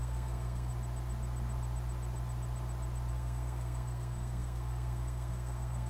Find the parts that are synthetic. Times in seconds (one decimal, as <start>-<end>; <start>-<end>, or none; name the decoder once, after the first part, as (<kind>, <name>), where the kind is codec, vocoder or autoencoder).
0.0-0.7 (codec, SNAC); 3.1-5.9